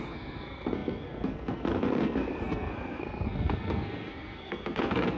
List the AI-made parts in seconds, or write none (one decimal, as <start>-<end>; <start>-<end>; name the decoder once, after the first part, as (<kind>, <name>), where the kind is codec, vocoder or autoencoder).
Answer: 0.0-5.2 (codec, SNAC)